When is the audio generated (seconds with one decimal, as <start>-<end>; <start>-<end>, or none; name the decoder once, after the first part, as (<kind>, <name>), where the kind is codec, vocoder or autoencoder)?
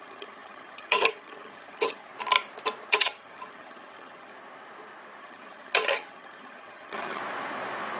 0.0-2.1 (vocoder, HiFi-GAN); 2.9-4.3; 5.2-7.2